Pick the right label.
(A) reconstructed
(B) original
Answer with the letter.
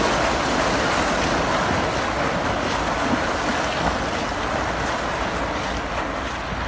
B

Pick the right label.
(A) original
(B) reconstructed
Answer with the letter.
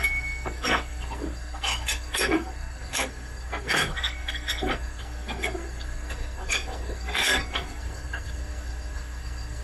B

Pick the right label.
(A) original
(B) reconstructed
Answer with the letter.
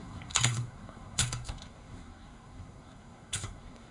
B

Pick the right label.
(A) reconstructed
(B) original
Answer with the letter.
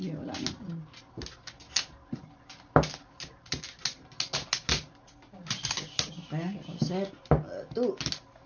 B